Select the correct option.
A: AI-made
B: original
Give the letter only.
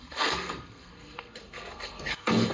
A